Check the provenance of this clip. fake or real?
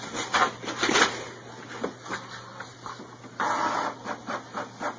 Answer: real